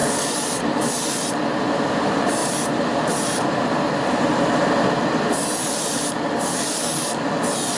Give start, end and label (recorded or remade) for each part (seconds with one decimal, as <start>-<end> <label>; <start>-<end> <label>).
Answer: 0.0-0.8 remade; 0.8-6.5 recorded; 6.5-7.1 remade; 7.1-7.8 recorded